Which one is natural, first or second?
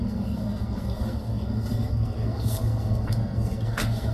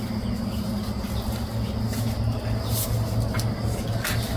second